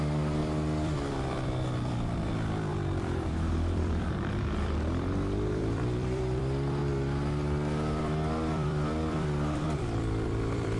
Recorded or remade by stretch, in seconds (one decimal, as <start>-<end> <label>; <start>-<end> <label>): 0.0-6.8 remade; 6.8-8.0 recorded; 8.0-10.8 remade